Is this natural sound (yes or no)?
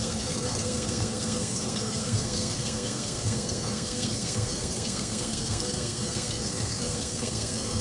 no